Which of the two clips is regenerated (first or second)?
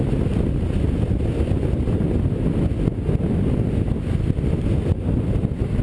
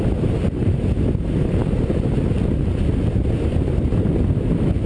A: second